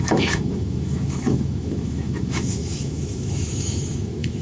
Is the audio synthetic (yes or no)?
yes